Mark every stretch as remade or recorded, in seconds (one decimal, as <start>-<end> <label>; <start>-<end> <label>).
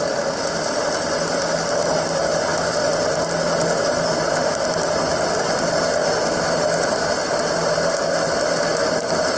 0.0-9.4 recorded